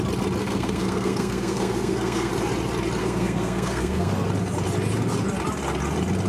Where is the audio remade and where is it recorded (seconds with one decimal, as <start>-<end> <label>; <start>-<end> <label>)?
0.0-0.4 recorded; 0.4-2.3 remade; 2.3-3.0 recorded; 3.0-4.1 remade; 4.1-6.3 recorded